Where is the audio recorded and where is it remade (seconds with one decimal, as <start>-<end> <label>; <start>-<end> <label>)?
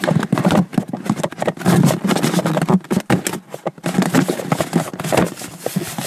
0.0-6.1 recorded